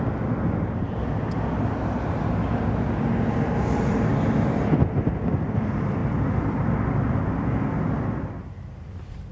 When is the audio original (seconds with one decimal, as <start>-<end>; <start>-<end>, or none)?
0.0-9.3